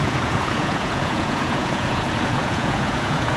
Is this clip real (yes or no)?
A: no